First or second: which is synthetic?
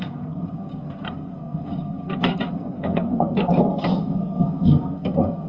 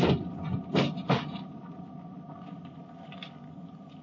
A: first